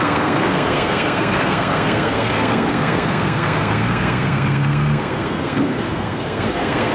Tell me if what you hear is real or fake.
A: fake